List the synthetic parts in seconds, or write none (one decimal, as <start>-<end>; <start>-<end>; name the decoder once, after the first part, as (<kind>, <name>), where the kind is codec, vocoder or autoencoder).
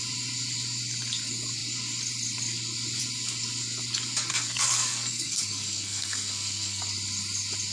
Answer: 4.3-6.8 (codec, SNAC)